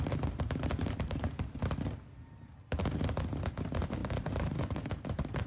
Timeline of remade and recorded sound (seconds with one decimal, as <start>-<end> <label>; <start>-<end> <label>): 0.0-1.6 remade; 1.6-3.6 recorded; 3.6-5.5 remade